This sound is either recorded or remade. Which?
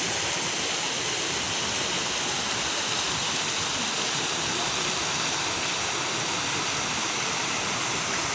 recorded